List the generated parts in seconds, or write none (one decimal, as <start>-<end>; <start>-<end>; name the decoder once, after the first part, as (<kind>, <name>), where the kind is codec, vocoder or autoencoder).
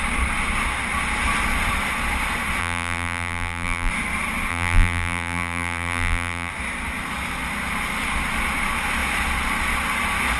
2.6-3.9 (vocoder, BigVGAN v2); 4.5-6.5